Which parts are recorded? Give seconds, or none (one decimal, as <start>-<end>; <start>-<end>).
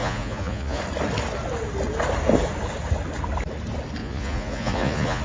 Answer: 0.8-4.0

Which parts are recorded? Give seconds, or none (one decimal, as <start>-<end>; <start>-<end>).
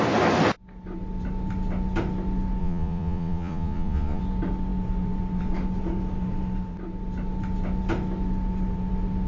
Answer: 0.0-2.6; 4.2-9.3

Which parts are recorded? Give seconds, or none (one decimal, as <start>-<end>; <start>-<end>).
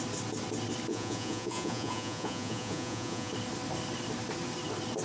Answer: 0.0-0.9; 3.3-5.0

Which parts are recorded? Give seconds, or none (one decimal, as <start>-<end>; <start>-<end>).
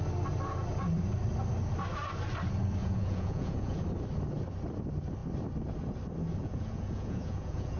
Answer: 0.0-2.8; 3.8-6.4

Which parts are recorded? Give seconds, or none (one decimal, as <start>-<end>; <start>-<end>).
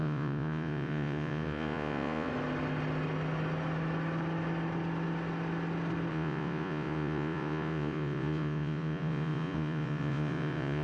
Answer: 2.3-6.1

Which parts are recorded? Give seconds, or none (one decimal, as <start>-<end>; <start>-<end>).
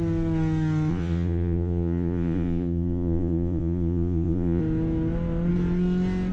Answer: 0.0-0.9; 4.6-6.3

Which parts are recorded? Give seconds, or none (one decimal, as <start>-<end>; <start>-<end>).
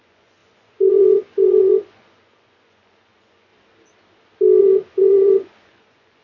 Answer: 3.5-4.6